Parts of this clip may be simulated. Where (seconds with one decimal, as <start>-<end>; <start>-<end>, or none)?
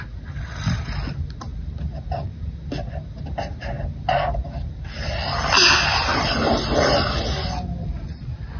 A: none